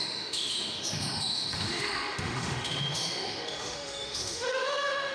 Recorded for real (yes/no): no